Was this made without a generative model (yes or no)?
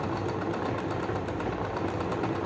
yes